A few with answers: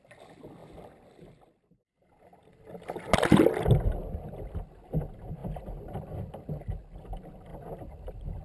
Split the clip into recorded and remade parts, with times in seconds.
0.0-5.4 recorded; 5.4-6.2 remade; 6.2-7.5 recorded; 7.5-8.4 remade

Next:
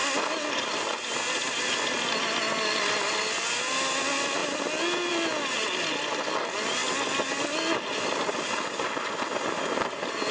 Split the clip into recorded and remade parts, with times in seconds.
0.0-10.3 recorded

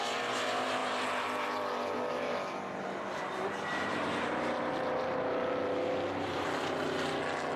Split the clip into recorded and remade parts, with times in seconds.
0.0-7.6 recorded

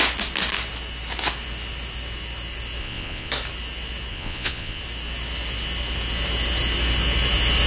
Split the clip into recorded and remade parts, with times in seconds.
0.0-2.8 recorded; 2.8-3.3 remade; 3.3-4.1 recorded; 4.1-4.8 remade; 4.8-7.7 recorded